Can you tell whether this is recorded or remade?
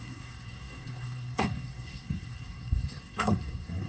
remade